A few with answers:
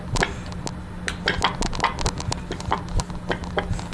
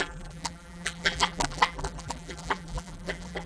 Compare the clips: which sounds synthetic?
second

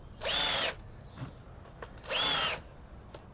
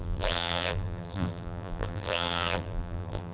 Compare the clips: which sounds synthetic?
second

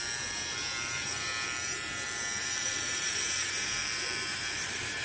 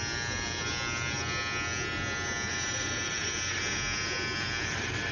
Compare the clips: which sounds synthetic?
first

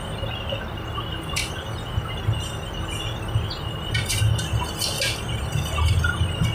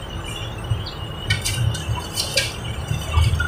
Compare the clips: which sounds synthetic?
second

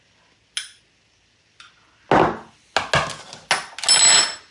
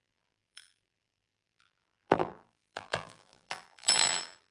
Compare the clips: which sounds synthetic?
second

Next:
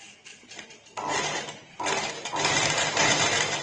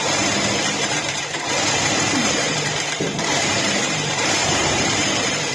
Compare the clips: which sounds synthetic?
second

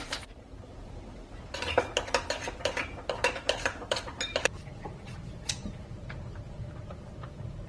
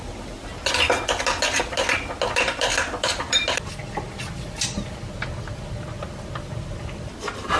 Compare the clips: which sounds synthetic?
first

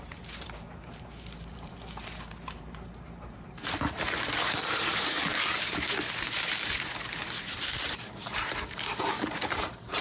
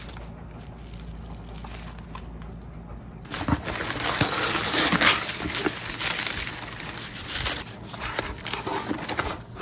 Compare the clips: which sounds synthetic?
first